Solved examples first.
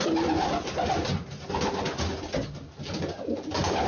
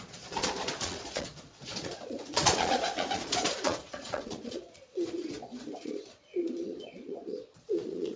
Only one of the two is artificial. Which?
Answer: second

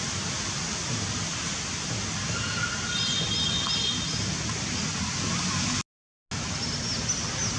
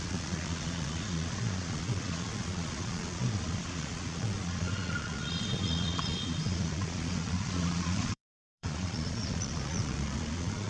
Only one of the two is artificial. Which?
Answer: second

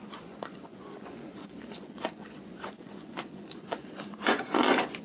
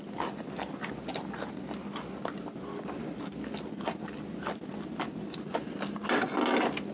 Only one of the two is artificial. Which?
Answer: first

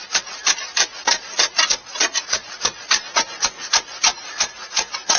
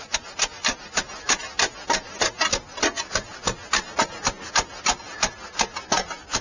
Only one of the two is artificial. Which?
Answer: first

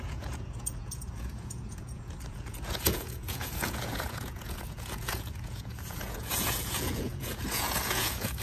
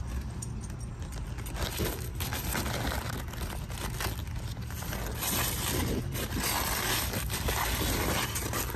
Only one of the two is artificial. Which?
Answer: first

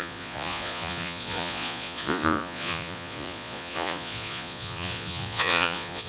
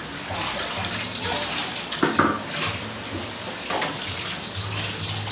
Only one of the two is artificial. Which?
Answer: first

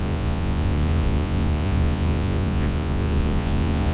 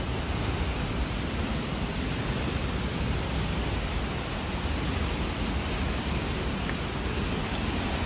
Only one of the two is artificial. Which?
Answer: first